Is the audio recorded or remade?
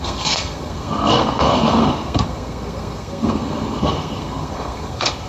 remade